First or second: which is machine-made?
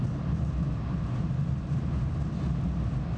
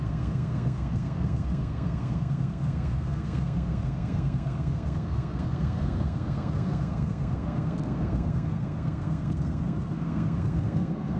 second